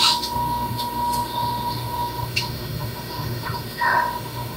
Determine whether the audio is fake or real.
fake